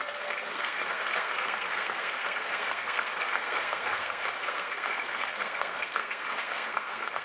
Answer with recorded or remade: remade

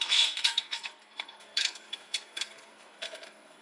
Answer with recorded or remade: remade